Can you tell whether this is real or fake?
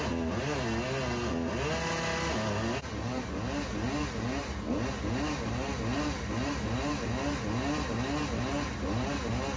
real